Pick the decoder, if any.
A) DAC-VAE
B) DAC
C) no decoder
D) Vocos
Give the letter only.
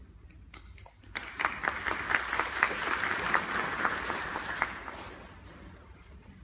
C